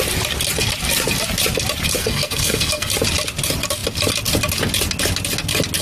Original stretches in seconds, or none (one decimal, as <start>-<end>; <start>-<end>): 0.0-2.0; 2.9-5.8